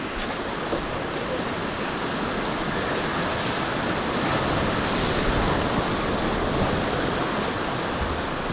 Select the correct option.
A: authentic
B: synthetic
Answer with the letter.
A